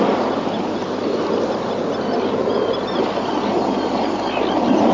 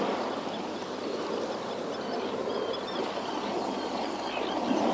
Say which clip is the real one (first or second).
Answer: first